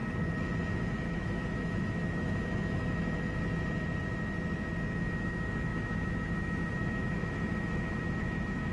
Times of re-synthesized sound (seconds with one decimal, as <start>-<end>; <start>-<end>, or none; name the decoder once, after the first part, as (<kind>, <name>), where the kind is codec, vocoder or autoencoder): 0.7-2.8 (autoencoder, DAC-VAE); 5.0-8.7